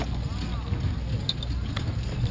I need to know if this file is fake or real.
real